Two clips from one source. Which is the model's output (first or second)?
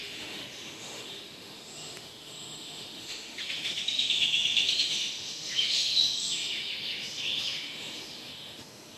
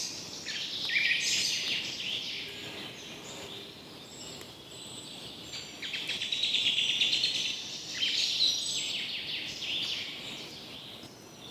first